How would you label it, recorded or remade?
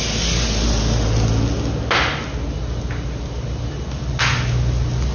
recorded